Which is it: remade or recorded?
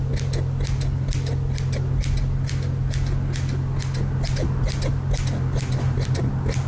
recorded